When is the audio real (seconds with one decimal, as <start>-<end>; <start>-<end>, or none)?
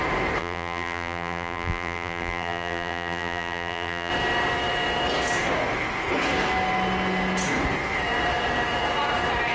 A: 0.0-0.4; 4.1-9.5